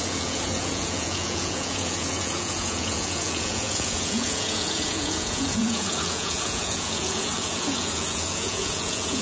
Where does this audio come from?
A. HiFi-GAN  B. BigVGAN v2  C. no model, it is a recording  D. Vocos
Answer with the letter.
D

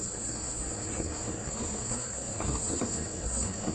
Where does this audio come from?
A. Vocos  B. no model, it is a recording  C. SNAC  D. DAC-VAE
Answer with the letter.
C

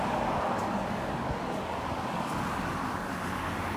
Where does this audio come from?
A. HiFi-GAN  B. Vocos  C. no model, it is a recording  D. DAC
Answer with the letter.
D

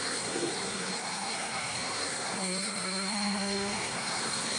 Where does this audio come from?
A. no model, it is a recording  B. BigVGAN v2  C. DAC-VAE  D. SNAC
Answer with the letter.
D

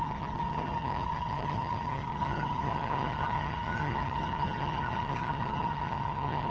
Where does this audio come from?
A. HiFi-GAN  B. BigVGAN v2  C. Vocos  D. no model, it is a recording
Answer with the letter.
A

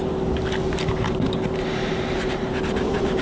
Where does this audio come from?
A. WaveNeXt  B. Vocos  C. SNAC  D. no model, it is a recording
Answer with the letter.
D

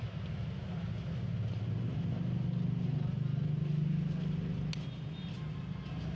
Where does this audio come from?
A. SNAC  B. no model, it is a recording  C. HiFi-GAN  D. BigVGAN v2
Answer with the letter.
B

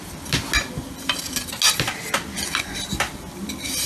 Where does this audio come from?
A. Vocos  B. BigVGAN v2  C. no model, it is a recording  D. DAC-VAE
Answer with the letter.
C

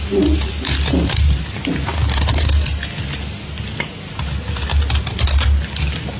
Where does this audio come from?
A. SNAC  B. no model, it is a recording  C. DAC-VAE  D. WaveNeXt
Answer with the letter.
B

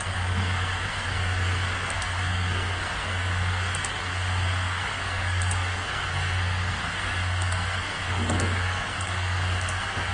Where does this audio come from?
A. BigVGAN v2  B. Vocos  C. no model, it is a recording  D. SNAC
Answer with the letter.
D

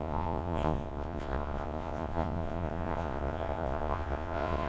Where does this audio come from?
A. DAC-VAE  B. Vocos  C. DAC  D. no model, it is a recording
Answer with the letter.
B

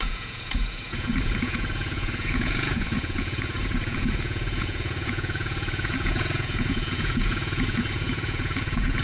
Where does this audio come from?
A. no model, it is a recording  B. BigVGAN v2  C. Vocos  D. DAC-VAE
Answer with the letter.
C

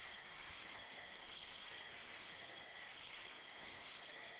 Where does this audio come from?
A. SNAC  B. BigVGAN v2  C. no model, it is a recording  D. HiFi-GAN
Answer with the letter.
A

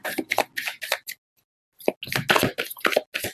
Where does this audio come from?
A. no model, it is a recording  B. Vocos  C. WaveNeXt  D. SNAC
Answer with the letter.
A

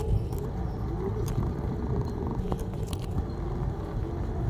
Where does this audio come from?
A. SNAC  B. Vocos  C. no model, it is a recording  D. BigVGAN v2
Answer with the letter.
C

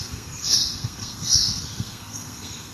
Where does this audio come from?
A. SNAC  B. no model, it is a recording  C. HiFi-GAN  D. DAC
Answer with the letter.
A